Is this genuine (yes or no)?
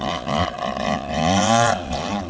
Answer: no